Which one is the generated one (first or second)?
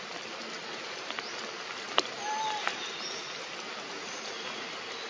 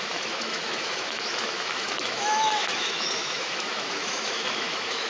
second